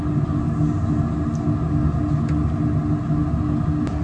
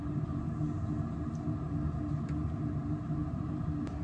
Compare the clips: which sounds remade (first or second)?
second